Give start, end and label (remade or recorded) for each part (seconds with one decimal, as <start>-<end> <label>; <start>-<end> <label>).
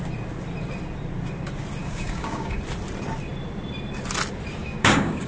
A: 0.0-1.8 recorded; 1.8-2.6 remade; 2.6-4.6 recorded; 4.6-5.3 remade